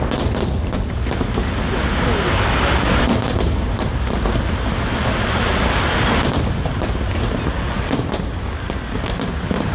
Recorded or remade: recorded